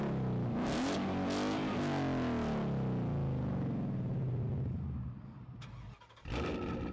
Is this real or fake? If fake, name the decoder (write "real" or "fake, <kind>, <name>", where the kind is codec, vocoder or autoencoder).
real